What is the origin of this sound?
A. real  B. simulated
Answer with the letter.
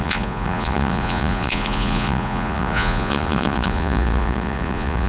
B